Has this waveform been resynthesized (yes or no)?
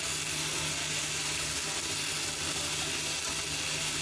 no